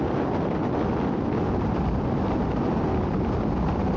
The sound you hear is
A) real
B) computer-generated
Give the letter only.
A